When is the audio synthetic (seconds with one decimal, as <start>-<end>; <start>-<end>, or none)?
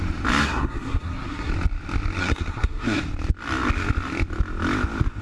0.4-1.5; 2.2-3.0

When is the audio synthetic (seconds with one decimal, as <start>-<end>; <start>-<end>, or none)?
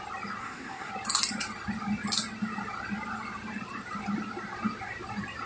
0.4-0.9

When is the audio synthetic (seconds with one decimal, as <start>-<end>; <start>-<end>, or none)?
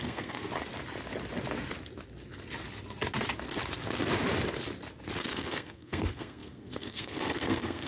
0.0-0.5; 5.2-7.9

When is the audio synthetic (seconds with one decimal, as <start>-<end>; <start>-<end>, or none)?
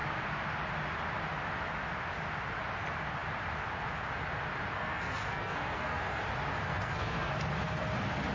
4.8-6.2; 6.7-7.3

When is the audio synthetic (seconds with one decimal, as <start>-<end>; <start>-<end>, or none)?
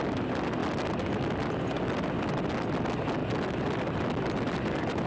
none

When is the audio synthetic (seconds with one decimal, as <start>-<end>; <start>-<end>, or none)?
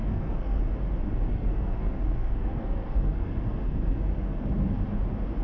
0.0-0.6; 1.3-4.5